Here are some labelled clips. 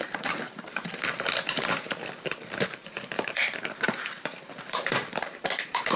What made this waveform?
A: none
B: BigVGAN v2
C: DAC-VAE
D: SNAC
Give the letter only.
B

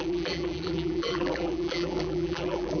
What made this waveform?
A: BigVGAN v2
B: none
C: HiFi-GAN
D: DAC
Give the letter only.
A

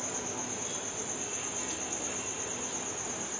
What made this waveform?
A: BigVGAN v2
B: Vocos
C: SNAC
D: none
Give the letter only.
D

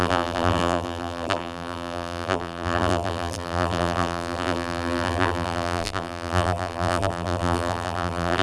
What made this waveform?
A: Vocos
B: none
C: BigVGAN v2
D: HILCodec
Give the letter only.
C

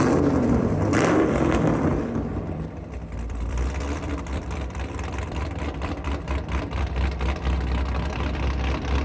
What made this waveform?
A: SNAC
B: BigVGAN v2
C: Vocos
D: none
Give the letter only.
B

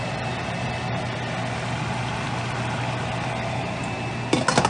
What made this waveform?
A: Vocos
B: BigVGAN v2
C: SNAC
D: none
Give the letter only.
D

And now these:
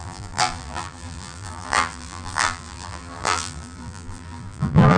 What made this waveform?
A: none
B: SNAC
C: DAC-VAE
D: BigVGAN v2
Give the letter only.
D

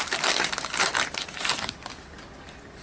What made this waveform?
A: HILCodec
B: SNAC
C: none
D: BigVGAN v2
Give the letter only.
C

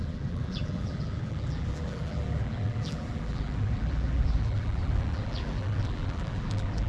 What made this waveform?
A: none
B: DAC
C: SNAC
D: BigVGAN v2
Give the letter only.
D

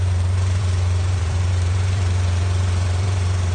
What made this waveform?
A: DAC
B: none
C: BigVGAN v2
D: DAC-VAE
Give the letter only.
C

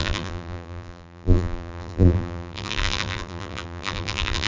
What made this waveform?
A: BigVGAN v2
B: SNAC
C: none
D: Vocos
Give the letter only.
A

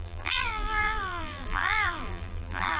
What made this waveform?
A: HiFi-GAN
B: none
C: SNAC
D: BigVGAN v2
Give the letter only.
D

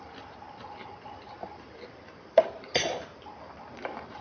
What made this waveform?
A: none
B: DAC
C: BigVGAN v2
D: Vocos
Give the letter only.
C